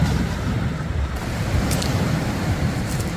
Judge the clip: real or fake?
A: fake